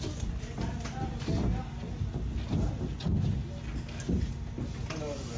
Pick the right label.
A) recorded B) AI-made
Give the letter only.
A